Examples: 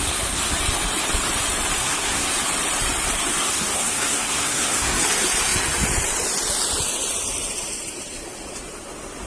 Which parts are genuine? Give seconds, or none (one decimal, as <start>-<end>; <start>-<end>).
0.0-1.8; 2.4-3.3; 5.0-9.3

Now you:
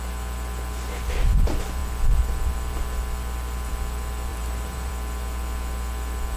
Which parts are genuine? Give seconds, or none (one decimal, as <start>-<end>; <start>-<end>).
0.0-4.3; 4.9-6.4

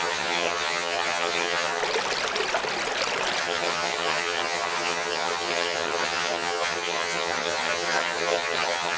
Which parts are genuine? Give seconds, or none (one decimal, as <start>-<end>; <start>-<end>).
1.8-3.4

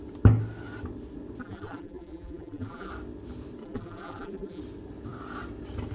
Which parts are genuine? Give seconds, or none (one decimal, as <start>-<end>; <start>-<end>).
0.0-1.4; 2.9-3.6; 4.6-5.9

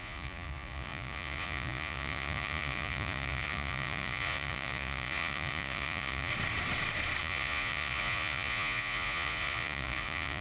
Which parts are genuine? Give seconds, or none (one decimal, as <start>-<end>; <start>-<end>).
6.3-7.2

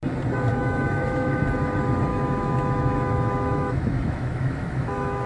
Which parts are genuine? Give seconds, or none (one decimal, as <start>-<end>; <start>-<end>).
0.0-0.5; 1.4-2.1